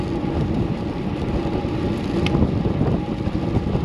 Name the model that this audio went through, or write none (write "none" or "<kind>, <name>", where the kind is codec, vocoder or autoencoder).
none